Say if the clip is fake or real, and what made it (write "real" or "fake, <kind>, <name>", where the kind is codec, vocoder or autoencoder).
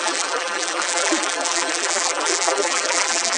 fake, vocoder, BigVGAN v2